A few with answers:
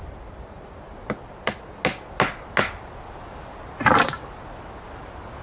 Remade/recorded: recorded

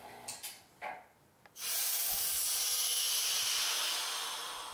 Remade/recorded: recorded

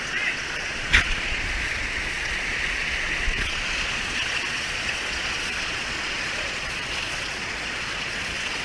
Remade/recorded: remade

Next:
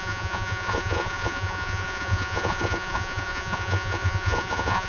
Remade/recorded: remade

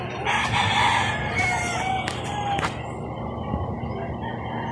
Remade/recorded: recorded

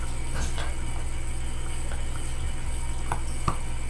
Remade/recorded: recorded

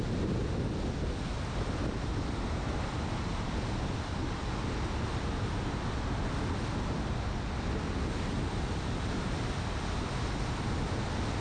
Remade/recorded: recorded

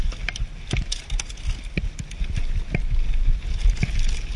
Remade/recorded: recorded